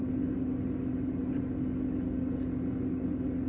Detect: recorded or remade recorded